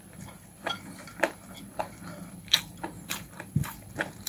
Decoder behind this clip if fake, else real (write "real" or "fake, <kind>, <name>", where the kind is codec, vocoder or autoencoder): fake, vocoder, BigVGAN v2